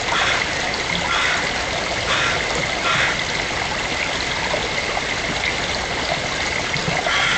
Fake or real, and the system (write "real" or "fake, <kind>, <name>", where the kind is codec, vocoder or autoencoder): real